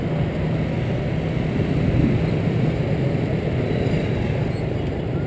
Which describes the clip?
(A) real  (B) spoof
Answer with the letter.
A